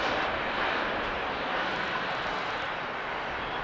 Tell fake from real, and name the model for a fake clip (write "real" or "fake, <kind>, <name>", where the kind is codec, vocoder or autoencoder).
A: real